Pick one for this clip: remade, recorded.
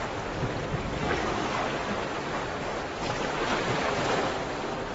recorded